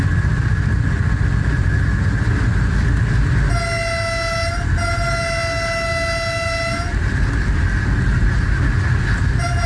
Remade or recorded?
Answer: recorded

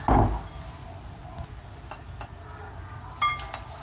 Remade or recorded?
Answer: recorded